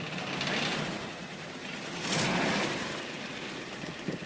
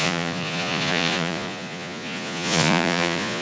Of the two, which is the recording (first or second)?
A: first